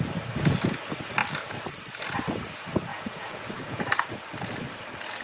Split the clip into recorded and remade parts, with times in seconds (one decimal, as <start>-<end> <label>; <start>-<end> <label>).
0.0-2.9 recorded; 2.9-3.8 remade; 3.8-5.2 recorded